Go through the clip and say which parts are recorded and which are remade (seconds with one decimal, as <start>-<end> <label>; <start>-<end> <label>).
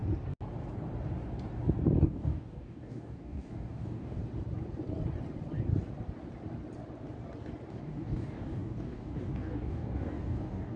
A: 0.0-2.0 recorded; 2.0-4.2 remade; 4.2-7.7 recorded; 7.7-10.8 remade